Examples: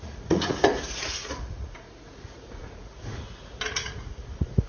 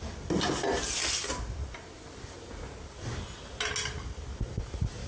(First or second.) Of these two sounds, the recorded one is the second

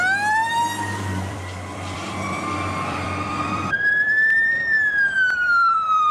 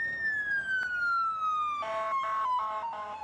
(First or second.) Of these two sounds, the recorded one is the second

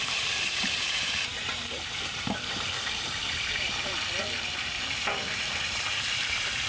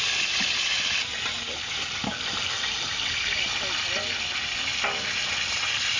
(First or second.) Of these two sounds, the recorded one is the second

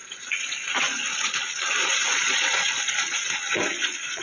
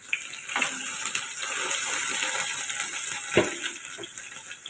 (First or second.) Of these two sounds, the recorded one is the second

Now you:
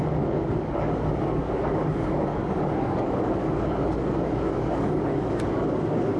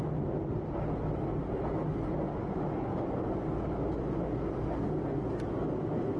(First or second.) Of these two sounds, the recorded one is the second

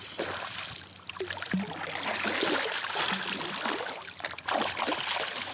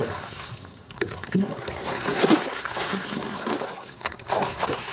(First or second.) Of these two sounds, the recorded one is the first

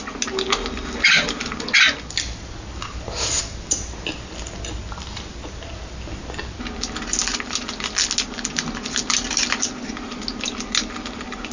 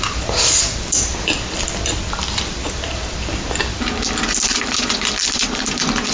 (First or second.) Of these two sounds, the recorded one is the first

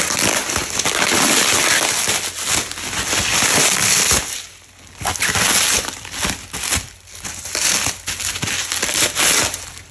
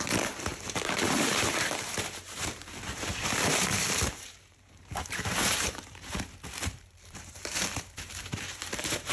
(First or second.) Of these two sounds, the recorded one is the first